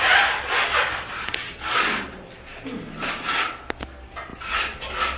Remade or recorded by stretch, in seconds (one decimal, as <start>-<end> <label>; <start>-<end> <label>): 0.0-5.2 recorded